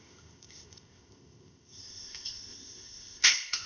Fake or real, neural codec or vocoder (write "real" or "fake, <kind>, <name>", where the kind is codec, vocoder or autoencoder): fake, codec, ZipCodec